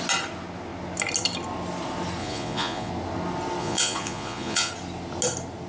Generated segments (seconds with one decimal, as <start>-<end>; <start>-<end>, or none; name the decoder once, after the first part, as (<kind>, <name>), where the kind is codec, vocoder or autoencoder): 2.2-2.9 (vocoder, Vocos); 3.6-4.7